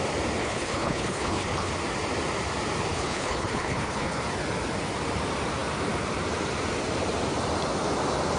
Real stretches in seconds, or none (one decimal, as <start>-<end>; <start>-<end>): 0.0-0.4; 1.7-2.9; 4.2-8.4